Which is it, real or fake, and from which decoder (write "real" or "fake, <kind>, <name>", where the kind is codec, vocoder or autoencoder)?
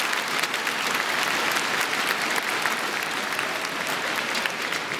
real